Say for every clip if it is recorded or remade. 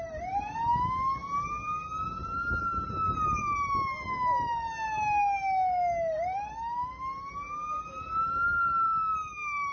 recorded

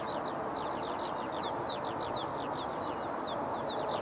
recorded